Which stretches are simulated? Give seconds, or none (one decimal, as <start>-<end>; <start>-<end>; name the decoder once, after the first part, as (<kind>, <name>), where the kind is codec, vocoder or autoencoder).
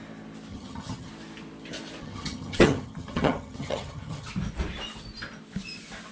0.5-1.1 (vocoder, HiFi-GAN); 2.0-4.3